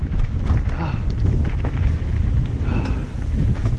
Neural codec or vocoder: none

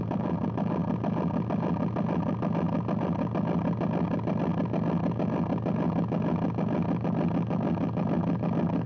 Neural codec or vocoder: none